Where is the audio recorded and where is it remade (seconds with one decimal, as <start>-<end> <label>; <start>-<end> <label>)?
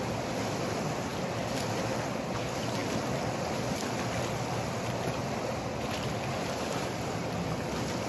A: 0.0-1.1 recorded; 1.1-1.8 remade; 1.8-2.8 recorded; 2.8-4.3 remade; 4.3-8.1 recorded